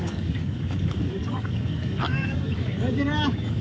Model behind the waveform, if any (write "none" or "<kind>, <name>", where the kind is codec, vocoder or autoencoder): codec, DAC